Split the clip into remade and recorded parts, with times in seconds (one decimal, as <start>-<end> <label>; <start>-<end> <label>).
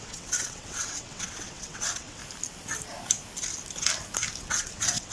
0.0-2.2 remade; 2.2-4.4 recorded; 4.4-5.1 remade